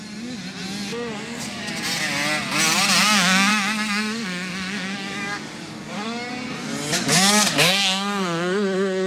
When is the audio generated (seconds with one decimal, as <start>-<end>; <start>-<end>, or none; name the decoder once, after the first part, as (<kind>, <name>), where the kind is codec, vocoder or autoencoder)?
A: 0.9-1.7 (codec, DAC); 3.5-6.3; 6.9-9.1